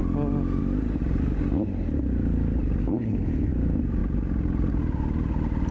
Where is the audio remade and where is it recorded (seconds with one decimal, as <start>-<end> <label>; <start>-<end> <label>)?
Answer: 0.0-2.8 recorded; 2.8-3.5 remade; 3.5-5.7 recorded